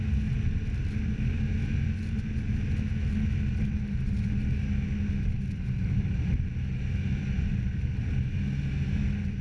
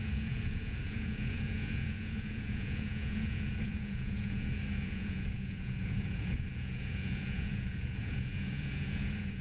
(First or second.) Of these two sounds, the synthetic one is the second